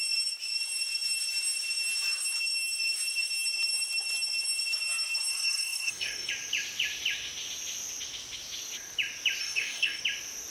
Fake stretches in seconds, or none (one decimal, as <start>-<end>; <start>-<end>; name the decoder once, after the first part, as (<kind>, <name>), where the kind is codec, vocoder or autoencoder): 5.3-6.3 (codec, DAC); 9.4-10.0

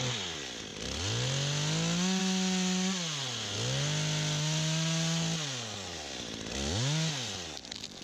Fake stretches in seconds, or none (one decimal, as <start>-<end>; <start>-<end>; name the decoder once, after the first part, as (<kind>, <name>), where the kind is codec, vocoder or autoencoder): none

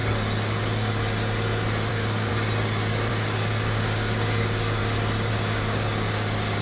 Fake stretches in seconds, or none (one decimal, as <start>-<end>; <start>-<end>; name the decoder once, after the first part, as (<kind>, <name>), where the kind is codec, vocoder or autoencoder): 1.9-2.3 (codec, DAC); 3.1-4.8; 5.3-6.6

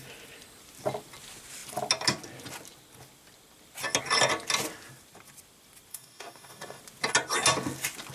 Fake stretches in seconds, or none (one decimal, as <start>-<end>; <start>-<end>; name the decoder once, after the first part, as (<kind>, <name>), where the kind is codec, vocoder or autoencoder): 5.9-6.8 (codec, DAC)

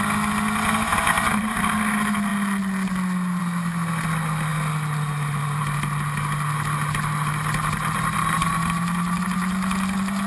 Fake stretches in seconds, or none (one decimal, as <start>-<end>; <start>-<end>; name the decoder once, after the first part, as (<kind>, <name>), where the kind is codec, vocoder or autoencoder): none

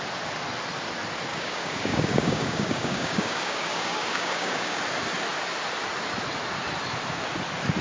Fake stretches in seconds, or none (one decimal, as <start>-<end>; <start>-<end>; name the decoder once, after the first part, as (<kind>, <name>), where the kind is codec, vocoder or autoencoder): 1.3-4.8 (codec, DAC)

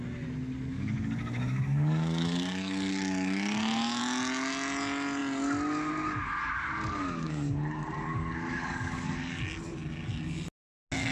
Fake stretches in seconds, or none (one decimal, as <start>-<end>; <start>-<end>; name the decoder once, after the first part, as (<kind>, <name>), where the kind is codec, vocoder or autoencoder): 0.7-4.0 (codec, DAC); 6.4-9.4